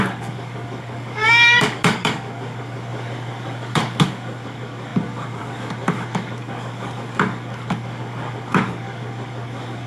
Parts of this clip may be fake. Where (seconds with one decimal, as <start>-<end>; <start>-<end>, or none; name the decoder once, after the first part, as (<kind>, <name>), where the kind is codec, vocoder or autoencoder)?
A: 0.0-9.9 (codec, DAC)